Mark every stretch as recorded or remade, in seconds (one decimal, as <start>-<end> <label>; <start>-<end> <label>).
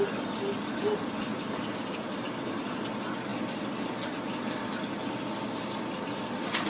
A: 0.0-6.7 recorded